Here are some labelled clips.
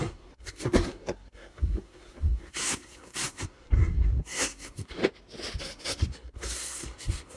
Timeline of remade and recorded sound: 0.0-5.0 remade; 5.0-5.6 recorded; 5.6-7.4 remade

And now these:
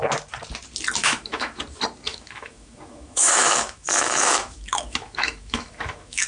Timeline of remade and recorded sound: 0.0-1.0 recorded; 1.0-1.6 remade; 1.6-2.1 recorded; 2.1-6.3 remade

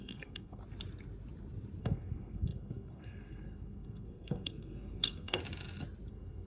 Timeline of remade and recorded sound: 0.0-0.6 remade; 0.6-1.8 recorded; 1.8-5.4 remade; 5.4-6.1 recorded; 6.1-6.5 remade

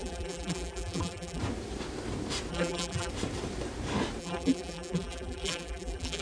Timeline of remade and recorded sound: 0.0-1.4 remade; 1.4-2.5 recorded; 2.5-3.1 remade; 3.1-4.2 recorded; 4.2-6.2 remade